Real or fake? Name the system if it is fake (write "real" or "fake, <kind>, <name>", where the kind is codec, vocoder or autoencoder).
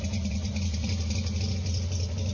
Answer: real